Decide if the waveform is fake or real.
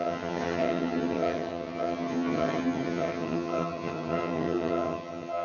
fake